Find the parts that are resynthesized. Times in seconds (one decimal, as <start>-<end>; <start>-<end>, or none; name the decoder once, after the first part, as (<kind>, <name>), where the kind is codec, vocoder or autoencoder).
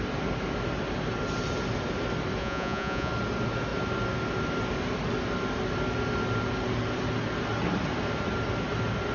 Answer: 2.4-3.1 (vocoder, Vocos)